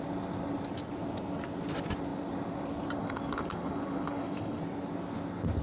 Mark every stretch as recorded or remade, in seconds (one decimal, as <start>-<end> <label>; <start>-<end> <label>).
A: 0.0-3.0 recorded; 3.0-4.6 remade; 4.6-5.6 recorded

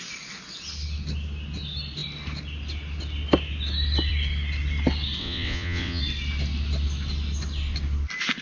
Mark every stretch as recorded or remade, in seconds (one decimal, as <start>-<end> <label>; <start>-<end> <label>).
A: 0.0-5.2 recorded; 5.2-6.0 remade; 6.0-8.4 recorded

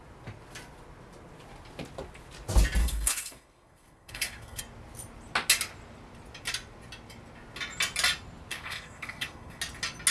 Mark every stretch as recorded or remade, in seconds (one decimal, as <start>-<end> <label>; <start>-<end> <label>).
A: 0.0-2.8 recorded; 2.8-4.6 remade; 4.6-8.5 recorded; 8.5-9.6 remade; 9.6-10.1 recorded

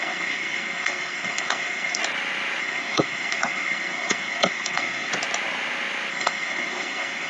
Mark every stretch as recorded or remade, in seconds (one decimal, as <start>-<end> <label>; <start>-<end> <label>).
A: 0.0-2.0 remade; 2.0-2.6 recorded; 2.6-5.1 remade; 5.1-6.1 recorded; 6.1-7.3 remade

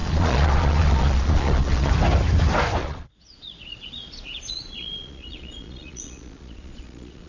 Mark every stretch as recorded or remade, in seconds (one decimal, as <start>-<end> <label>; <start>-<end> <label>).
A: 0.0-1.9 remade; 1.9-2.8 recorded; 2.8-7.3 remade

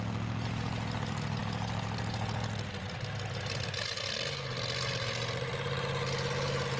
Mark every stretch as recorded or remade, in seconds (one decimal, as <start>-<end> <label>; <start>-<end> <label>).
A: 0.0-6.8 recorded

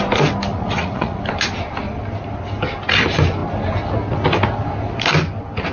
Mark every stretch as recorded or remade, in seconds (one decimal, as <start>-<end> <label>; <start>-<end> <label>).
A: 0.0-0.5 recorded; 0.5-1.2 remade; 1.2-5.7 recorded

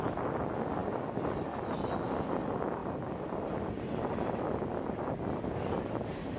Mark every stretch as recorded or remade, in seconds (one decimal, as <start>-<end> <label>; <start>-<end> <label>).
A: 0.0-6.4 recorded